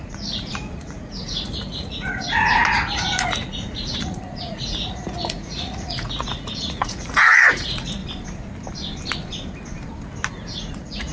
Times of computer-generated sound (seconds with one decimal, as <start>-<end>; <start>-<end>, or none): 0.0-8.0; 10.3-11.1